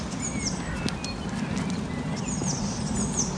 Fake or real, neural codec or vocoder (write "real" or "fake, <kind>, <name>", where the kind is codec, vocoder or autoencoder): real